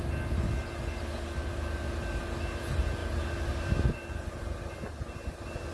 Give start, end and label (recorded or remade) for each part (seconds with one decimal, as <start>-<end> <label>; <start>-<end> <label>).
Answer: 0.0-5.7 recorded